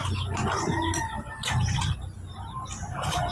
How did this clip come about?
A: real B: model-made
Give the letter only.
A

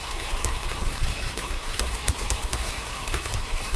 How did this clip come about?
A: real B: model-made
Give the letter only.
B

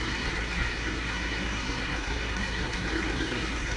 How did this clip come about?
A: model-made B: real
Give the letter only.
A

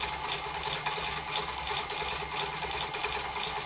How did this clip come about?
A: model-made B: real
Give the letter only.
B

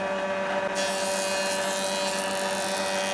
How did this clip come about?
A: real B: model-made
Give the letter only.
A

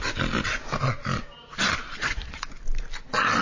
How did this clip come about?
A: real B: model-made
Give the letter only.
A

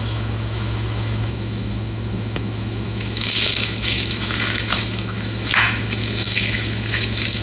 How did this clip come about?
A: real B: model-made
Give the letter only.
B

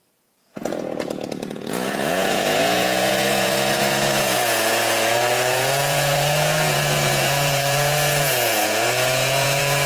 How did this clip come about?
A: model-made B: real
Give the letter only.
A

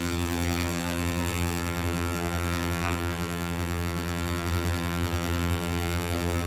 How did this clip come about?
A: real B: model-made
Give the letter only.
B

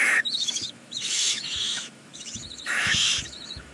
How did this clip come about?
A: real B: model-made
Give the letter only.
B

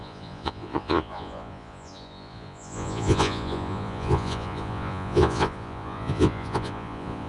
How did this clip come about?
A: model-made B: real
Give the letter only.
A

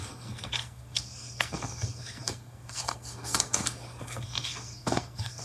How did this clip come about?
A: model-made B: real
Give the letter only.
A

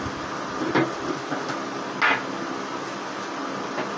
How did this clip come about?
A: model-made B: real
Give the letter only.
B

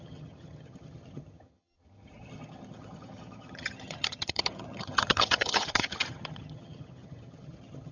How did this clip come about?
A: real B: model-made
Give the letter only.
B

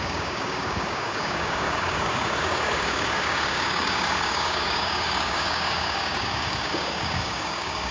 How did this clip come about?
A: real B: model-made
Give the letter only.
B